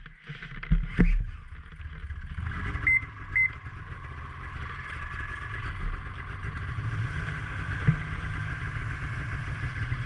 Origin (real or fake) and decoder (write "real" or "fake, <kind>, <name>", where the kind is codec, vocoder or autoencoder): real